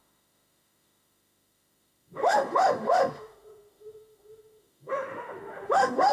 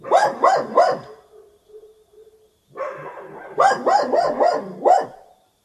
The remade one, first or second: first